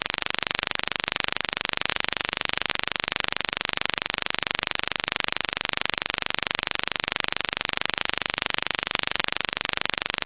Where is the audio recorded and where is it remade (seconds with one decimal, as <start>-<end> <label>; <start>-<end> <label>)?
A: 0.0-1.9 recorded; 1.9-2.7 remade; 2.7-8.0 recorded; 8.0-9.2 remade; 9.2-10.3 recorded